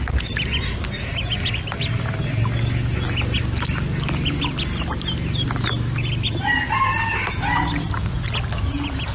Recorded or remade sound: recorded